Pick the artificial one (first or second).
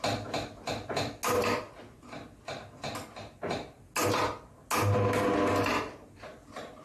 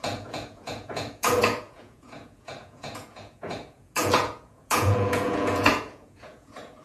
second